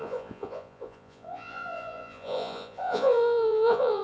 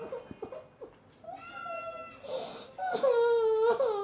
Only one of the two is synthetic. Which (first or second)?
first